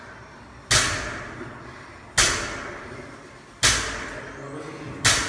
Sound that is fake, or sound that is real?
real